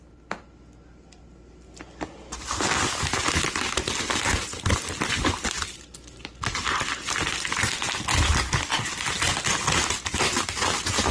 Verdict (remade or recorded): recorded